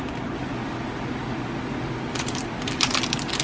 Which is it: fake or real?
real